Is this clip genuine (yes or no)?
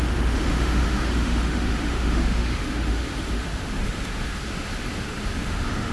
no